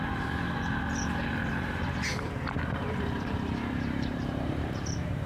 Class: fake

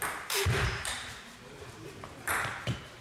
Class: fake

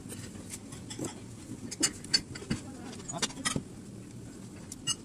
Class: real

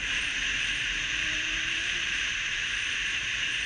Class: fake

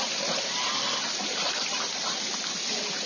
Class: real